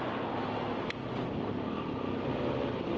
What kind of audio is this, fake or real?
real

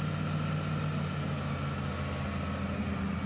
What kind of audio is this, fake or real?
real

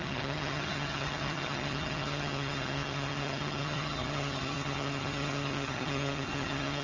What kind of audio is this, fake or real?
fake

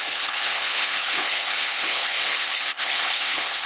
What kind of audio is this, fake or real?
fake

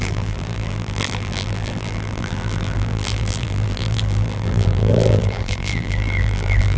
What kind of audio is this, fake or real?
fake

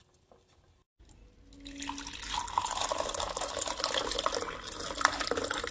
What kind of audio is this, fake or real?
real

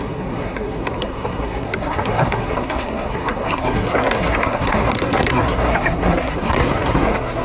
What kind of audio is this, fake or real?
fake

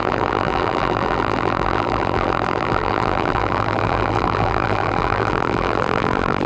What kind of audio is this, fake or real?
fake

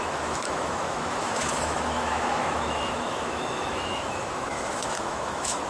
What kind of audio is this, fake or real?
fake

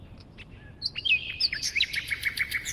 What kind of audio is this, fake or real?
real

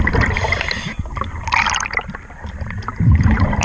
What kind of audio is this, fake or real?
fake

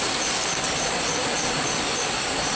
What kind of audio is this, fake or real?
real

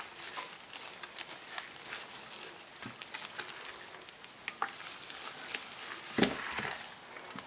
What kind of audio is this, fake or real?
real